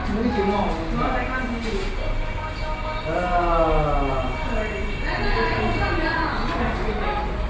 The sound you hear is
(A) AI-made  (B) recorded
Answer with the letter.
B